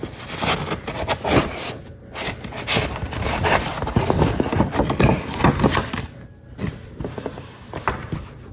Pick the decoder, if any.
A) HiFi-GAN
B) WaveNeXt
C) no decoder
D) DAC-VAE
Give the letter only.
C